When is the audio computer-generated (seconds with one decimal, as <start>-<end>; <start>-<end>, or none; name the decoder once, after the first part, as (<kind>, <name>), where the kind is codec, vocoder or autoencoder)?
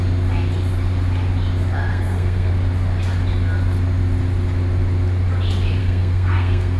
1.9-2.5 (codec, SNAC); 5.8-6.8